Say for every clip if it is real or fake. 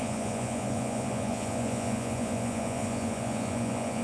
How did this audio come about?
fake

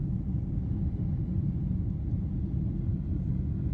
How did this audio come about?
real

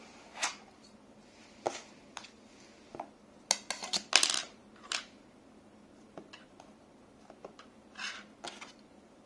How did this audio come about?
real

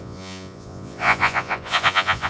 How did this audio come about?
fake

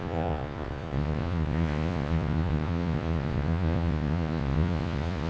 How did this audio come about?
fake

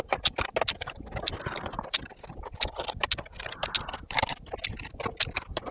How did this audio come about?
real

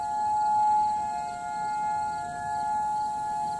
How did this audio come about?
real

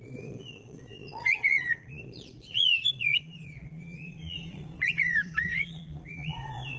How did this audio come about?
fake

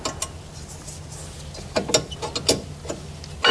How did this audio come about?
real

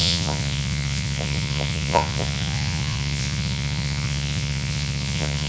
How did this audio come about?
fake